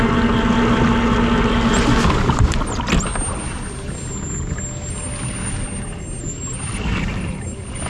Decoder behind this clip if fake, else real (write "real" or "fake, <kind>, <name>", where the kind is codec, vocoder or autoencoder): real